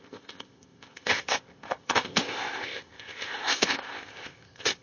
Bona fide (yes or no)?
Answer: no